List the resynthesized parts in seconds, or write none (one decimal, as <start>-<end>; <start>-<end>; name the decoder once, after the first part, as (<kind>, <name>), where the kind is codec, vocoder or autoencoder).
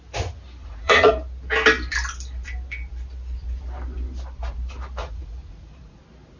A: 0.6-1.1 (vocoder, Vocos); 5.0-6.0